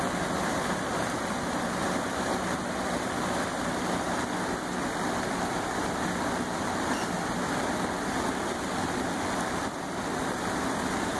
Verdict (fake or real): real